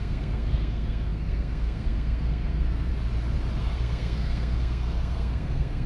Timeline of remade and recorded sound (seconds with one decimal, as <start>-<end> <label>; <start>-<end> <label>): 0.0-2.9 remade; 2.9-3.6 recorded; 3.6-5.9 remade